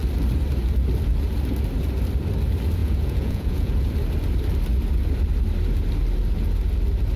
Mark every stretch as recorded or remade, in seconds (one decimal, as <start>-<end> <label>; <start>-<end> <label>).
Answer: 0.0-2.8 recorded; 2.8-3.9 remade; 3.9-7.2 recorded